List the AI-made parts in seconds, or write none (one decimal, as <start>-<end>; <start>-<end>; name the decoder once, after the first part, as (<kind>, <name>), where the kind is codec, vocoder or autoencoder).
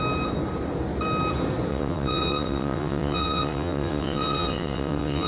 1.7-5.3 (vocoder, WaveNeXt)